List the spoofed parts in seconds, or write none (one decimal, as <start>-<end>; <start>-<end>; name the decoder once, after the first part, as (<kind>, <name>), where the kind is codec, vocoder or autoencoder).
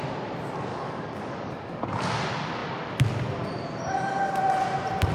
0.7-1.9 (codec, DAC)